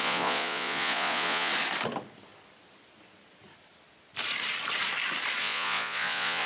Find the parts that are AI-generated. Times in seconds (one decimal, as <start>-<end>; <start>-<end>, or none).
0.0-1.5; 5.4-6.5